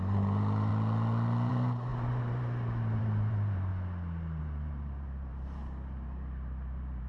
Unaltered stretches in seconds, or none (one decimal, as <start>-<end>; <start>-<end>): 0.7-1.5; 3.7-4.4

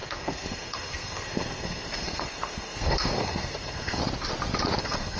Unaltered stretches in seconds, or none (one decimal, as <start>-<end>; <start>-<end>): 4.0-4.8

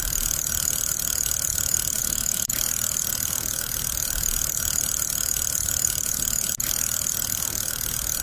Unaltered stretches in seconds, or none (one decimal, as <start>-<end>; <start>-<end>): 0.0-2.0; 2.5-8.2

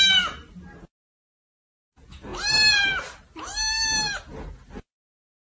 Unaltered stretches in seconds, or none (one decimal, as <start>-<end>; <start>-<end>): 0.0-5.4

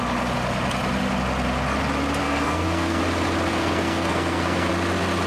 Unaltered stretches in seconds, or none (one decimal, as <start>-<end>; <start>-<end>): 0.0-2.2; 3.0-3.5; 4.7-5.3

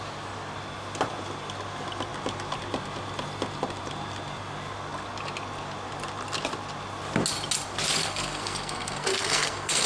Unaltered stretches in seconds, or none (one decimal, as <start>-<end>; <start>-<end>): 0.0-8.0

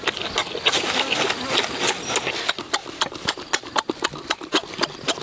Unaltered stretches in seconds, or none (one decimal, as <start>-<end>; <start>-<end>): 0.0-5.2

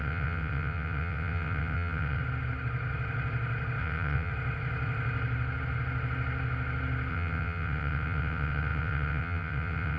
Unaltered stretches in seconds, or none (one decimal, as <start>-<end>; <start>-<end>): 2.2-3.8; 4.3-7.1